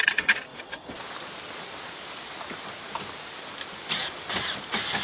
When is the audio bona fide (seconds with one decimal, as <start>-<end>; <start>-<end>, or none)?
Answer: 0.0-5.0